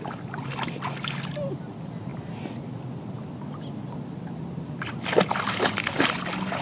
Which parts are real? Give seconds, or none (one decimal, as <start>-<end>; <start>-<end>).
0.0-6.6